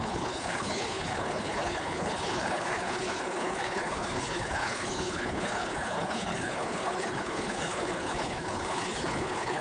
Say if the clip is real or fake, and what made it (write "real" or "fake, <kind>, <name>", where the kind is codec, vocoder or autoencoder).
fake, codec, HILCodec